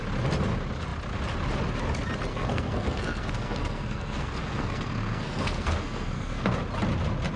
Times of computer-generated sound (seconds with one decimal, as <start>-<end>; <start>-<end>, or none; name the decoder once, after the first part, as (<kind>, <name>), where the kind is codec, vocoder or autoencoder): 2.3-6.5 (codec, SNAC)